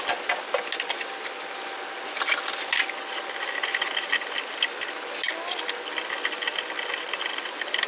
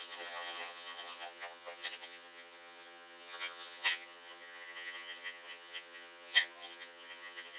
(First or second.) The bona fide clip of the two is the first